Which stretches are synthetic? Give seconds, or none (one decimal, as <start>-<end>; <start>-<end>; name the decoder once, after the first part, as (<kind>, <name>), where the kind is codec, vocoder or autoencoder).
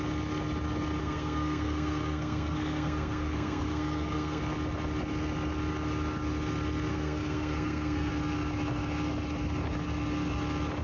1.0-4.4 (codec, SNAC); 6.9-8.1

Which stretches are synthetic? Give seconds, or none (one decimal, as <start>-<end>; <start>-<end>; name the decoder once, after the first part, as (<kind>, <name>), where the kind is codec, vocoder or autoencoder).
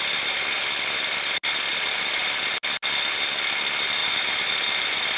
1.7-2.6 (vocoder, BigVGAN v2); 4.0-5.2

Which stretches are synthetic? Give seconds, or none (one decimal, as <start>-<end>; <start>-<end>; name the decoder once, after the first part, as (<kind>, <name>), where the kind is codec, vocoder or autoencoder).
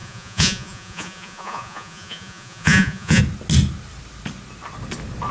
0.0-3.2 (vocoder, Vocos)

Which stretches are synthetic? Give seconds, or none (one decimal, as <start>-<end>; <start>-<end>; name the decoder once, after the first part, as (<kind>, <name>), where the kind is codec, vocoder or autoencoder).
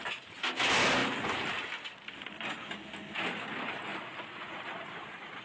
3.9-5.4 (vocoder, Vocos)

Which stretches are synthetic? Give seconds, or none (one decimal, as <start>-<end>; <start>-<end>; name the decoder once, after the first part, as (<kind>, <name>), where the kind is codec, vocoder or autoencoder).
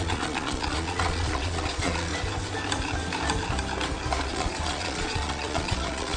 0.0-2.1 (vocoder, Vocos); 4.2-6.2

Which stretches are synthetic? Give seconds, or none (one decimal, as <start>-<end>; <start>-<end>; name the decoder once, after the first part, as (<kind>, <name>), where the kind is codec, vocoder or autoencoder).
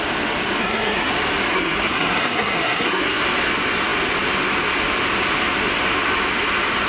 0.6-1.1 (codec, SNAC); 1.5-3.2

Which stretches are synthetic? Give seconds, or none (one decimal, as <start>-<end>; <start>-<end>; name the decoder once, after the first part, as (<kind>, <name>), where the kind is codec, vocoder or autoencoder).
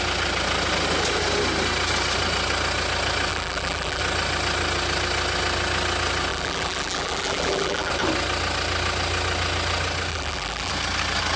3.3-4.0 (vocoder, BigVGAN v2); 6.3-7.9; 10.1-10.7